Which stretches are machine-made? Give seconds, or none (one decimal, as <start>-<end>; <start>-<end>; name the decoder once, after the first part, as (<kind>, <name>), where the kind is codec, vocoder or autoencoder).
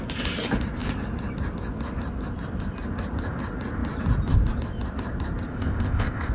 5.5-6.3 (codec, ZipCodec)